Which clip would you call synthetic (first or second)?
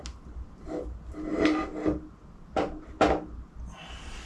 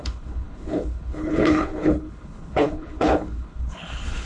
second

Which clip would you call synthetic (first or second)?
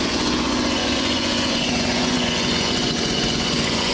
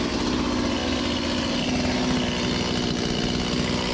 first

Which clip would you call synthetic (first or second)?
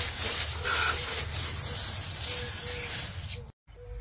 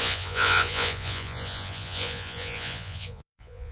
second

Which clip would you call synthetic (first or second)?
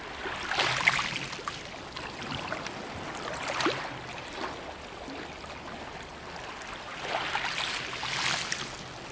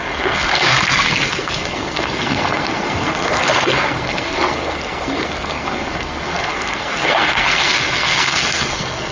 second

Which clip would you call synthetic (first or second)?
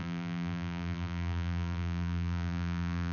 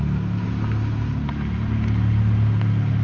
first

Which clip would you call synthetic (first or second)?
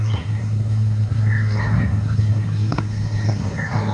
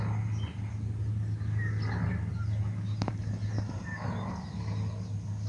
first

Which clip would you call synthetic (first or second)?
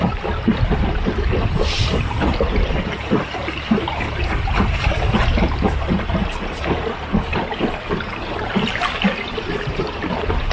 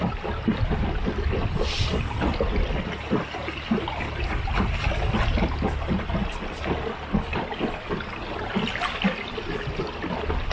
first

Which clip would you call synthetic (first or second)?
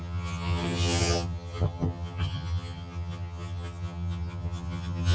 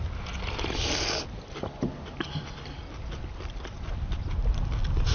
first